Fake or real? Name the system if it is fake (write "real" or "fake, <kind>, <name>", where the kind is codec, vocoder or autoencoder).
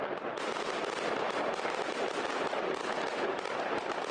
real